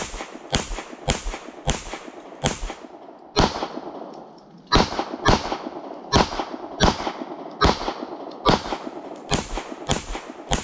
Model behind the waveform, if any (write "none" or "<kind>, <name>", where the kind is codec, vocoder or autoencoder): none